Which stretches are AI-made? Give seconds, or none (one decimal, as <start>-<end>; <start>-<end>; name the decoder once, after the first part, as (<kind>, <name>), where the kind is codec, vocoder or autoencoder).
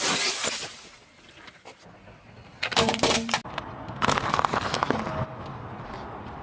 none